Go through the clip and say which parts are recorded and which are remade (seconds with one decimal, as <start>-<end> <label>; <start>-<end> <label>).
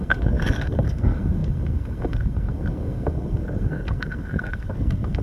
0.0-5.2 remade